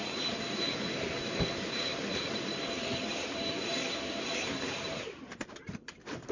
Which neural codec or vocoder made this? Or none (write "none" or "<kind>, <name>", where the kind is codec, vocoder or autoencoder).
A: vocoder, BigVGAN v2